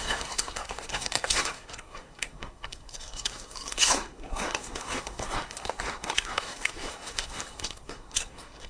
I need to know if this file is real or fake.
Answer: fake